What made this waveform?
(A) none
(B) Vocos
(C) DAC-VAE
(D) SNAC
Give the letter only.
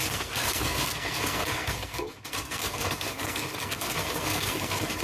D